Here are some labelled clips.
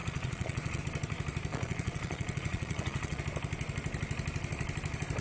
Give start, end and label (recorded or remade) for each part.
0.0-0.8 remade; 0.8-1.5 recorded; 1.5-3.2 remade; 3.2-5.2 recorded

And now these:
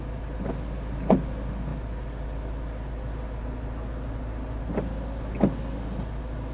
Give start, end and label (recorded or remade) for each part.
0.0-6.5 recorded

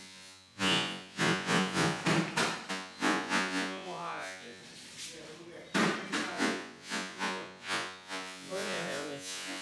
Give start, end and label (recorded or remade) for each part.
0.0-2.0 remade; 2.0-2.7 recorded; 2.7-4.6 remade; 4.6-6.3 recorded; 6.3-9.6 remade

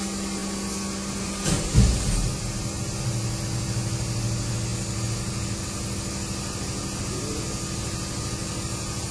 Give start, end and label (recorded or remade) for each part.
0.0-9.1 recorded

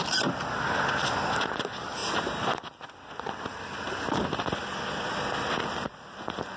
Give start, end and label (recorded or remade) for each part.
0.0-6.6 recorded

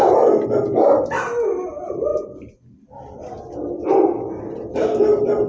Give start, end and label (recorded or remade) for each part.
0.0-5.5 recorded